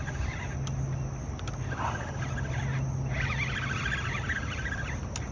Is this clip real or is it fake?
real